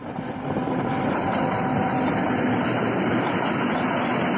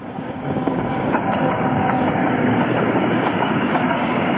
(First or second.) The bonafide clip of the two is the first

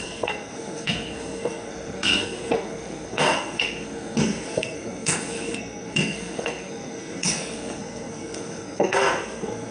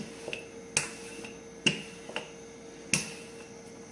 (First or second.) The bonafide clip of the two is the second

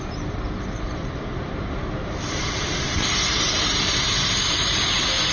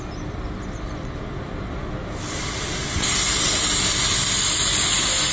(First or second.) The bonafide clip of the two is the second